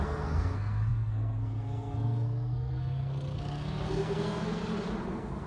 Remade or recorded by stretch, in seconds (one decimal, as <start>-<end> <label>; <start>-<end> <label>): 0.0-4.6 remade; 4.6-5.1 recorded; 5.1-5.5 remade